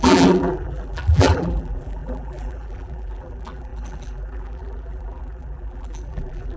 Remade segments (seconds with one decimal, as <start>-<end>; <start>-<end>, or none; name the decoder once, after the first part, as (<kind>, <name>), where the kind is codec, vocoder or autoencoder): 0.0-6.6 (vocoder, BigVGAN v2)